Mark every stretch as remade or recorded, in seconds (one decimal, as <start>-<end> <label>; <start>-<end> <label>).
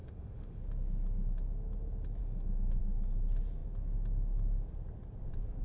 0.0-0.6 remade; 0.6-2.2 recorded; 2.2-2.8 remade; 2.8-5.6 recorded